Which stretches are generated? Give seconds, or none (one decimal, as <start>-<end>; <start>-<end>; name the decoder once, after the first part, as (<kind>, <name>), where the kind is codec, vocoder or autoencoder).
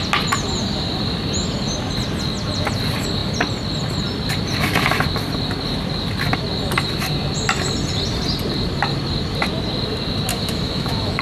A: 10.3-11.2 (autoencoder, DAC-VAE)